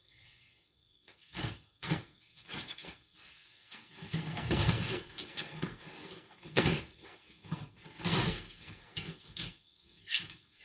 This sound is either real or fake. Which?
fake